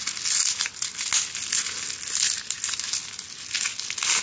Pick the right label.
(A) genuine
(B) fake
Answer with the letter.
A